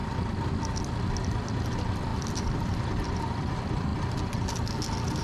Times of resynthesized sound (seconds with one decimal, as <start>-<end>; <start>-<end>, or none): 2.1-3.3